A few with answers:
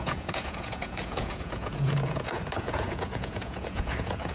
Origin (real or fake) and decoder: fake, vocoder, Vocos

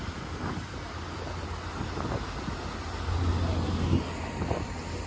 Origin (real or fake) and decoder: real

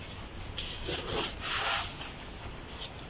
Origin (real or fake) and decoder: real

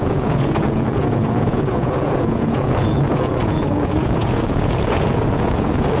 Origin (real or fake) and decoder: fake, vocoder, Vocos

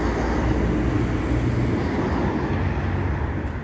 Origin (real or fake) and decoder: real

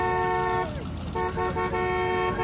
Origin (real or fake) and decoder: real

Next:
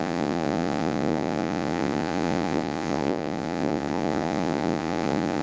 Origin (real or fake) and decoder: fake, vocoder, Vocos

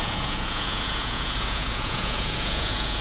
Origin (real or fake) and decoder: fake, vocoder, Vocos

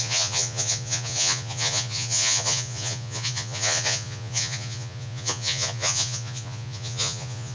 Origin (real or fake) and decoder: fake, vocoder, Vocos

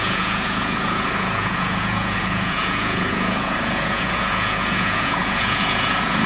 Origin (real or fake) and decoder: fake, vocoder, Vocos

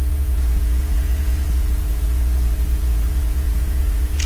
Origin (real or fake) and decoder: fake, vocoder, Vocos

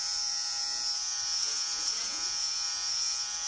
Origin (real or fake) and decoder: fake, vocoder, Vocos